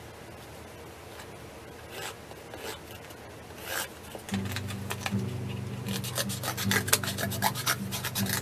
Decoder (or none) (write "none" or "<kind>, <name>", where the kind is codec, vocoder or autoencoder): none